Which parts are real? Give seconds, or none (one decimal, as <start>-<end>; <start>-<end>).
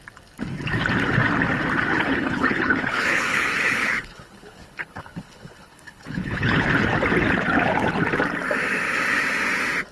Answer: 0.0-1.9; 6.7-9.9